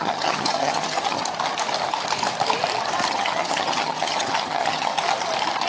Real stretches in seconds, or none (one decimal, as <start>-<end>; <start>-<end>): 1.2-3.1; 4.9-5.7